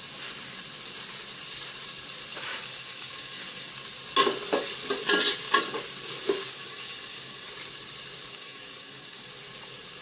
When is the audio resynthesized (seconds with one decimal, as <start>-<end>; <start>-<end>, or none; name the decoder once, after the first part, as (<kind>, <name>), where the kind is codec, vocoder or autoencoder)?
2.5-3.7 (codec, DAC); 6.5-7.5; 8.3-9.3